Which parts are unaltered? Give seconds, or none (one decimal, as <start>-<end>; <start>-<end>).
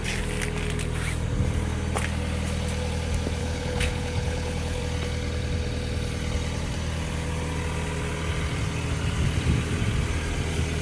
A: 0.0-3.4; 4.8-10.8